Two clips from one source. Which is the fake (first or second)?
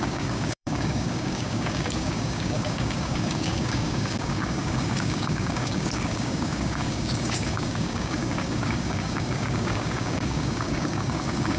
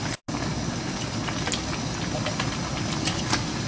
first